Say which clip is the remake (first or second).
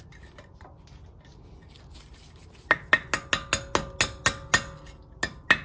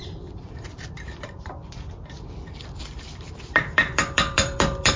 second